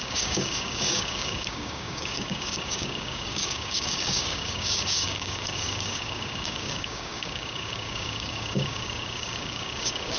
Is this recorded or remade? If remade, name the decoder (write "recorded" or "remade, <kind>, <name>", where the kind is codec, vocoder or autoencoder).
remade, codec, DAC